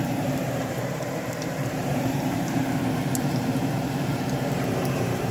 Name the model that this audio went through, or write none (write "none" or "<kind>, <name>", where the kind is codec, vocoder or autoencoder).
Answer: vocoder, BigVGAN v2